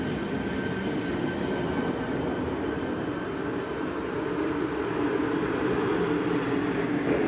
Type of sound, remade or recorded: recorded